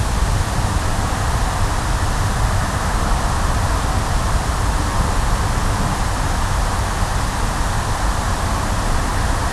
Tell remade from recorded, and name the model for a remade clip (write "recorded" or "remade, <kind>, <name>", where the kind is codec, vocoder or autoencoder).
recorded